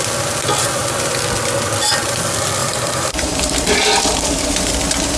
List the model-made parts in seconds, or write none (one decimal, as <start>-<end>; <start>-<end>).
2.6-5.2